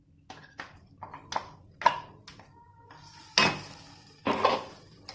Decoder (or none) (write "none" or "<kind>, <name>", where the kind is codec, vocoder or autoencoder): none